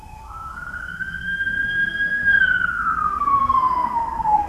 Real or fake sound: fake